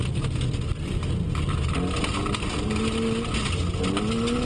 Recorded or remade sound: recorded